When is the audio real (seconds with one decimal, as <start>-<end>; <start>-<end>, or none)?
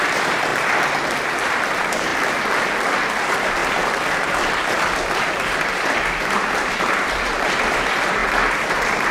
0.5-1.5; 2.1-3.2; 3.6-6.6; 8.2-8.7